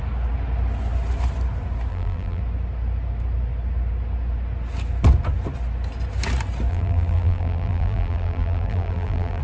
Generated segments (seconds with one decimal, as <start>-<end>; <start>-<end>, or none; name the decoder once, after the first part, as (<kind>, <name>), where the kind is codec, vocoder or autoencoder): 1.9-2.4 (vocoder, BigVGAN v2); 6.7-9.4